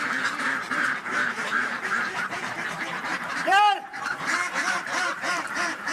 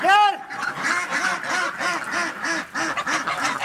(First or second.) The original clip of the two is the second